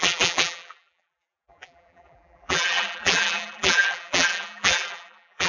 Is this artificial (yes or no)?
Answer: yes